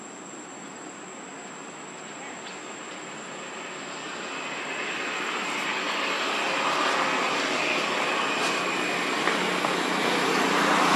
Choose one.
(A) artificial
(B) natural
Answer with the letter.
B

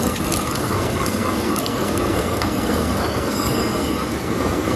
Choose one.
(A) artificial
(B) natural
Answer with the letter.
A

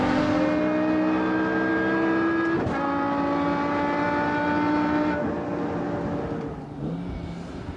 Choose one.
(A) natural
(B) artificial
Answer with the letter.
A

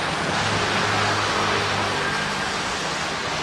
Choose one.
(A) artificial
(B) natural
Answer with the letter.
B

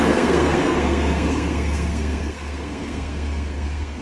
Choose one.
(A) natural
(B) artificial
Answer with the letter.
B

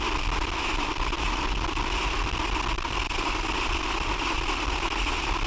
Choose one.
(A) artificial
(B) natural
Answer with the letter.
B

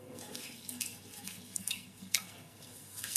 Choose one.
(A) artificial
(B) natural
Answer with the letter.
A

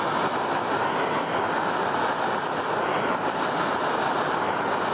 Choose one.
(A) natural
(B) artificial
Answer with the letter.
A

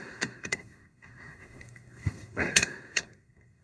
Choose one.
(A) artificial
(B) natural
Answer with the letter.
A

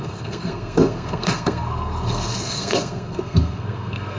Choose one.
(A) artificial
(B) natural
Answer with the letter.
A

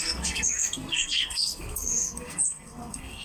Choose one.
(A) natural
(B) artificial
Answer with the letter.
B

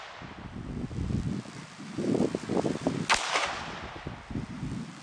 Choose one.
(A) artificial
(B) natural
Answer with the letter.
B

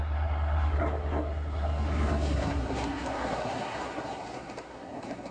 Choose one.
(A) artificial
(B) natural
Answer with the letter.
A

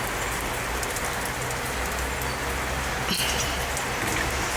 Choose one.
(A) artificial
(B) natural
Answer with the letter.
B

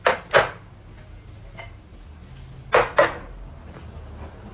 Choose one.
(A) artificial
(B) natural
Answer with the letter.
B